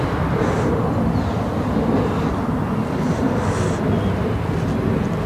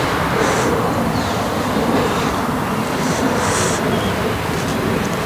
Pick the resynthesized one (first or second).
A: second